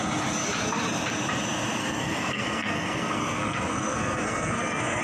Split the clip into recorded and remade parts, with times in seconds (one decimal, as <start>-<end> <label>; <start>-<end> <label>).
0.0-1.8 recorded; 1.8-5.0 remade